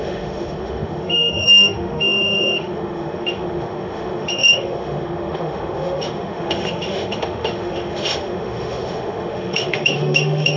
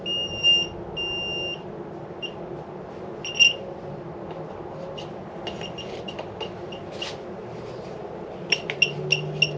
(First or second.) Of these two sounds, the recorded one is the second